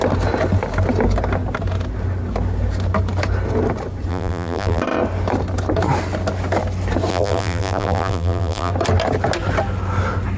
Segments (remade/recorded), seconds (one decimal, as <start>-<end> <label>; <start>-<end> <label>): 0.0-4.1 recorded; 4.1-4.8 remade; 4.8-7.1 recorded; 7.1-8.7 remade; 8.7-10.4 recorded